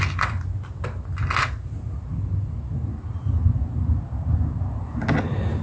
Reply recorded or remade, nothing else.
recorded